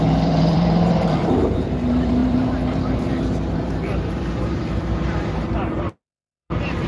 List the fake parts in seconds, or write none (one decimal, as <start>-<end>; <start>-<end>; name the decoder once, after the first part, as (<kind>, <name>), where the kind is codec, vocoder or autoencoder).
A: 0.0-6.9 (vocoder, BigVGAN v2)